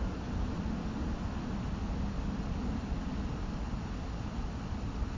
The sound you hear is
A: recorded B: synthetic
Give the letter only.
A